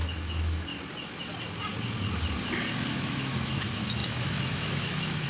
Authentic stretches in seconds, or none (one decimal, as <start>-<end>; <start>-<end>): 0.7-2.9